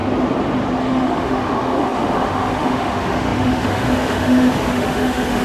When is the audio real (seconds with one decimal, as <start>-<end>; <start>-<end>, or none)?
0.0-0.8